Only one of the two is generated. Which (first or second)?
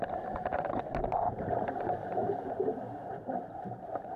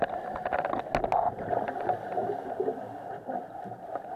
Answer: first